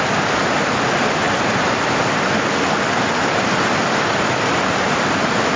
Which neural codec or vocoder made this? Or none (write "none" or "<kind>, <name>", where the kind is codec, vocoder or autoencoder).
vocoder, BigVGAN v2